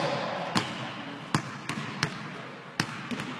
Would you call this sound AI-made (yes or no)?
no